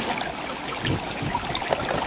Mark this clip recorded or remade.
recorded